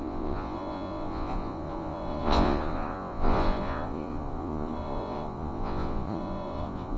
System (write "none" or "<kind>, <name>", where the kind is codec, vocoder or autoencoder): vocoder, Vocos